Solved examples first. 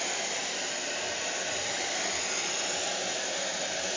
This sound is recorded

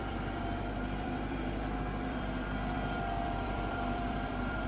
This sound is remade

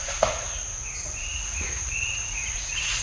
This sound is remade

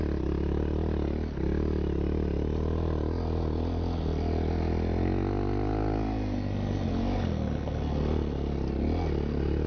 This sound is recorded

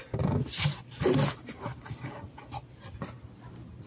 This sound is recorded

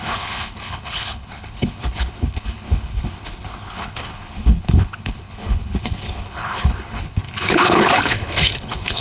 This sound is remade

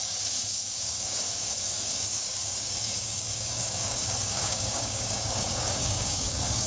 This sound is remade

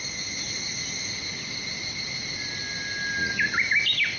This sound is recorded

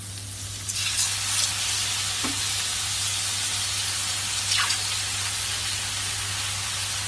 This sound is recorded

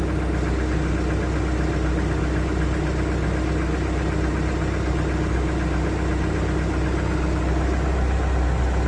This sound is recorded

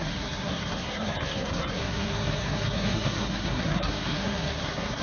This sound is remade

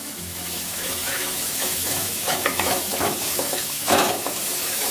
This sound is remade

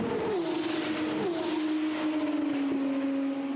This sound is recorded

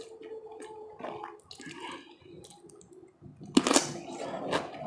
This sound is recorded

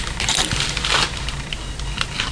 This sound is recorded